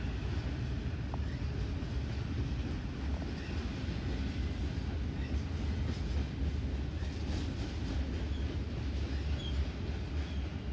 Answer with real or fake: real